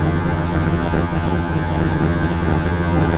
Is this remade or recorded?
remade